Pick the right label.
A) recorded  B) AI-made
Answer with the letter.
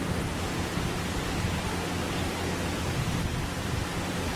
A